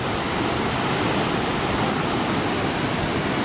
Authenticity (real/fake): real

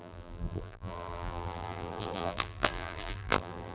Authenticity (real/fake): fake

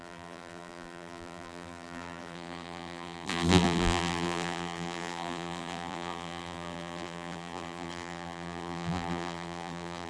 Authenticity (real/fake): fake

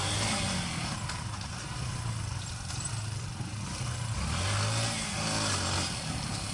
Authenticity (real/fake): real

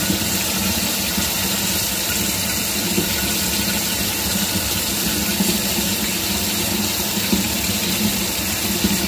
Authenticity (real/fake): real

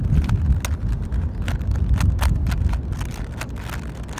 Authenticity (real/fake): real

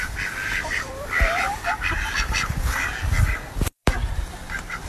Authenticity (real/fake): fake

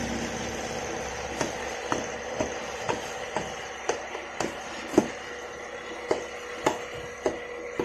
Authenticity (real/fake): real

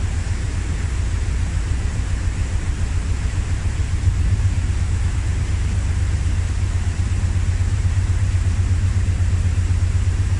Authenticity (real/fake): fake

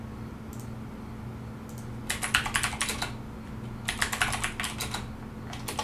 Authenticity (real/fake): real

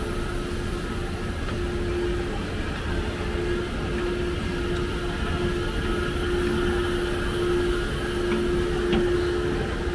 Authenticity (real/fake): real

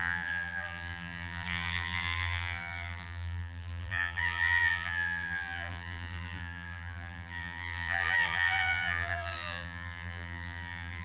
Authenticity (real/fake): fake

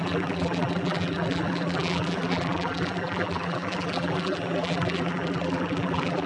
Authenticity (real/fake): fake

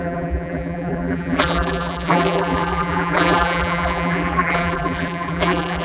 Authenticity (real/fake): fake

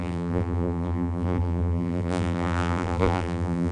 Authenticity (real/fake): fake